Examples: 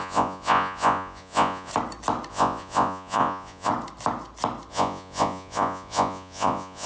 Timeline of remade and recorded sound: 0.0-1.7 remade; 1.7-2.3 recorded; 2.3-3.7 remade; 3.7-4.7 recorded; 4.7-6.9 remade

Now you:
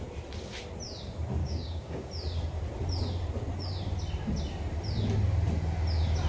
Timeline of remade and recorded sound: 0.0-1.4 recorded; 1.4-2.1 remade; 2.1-6.3 recorded

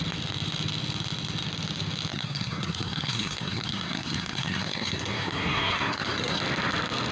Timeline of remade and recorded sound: 0.0-2.1 recorded; 2.1-6.4 remade; 6.4-7.1 recorded

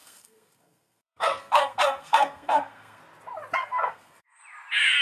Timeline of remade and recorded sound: 0.0-3.0 remade; 3.0-3.6 recorded; 3.6-4.4 remade; 4.4-5.0 recorded

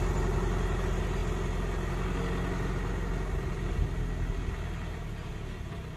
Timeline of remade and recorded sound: 0.0-6.0 recorded